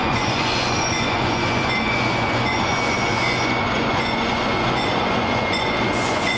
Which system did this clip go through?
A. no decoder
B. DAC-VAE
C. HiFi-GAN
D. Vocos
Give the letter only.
D